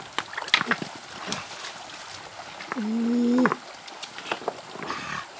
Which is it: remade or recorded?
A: recorded